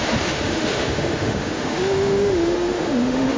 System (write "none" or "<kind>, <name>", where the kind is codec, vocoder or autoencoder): autoencoder, DAC-VAE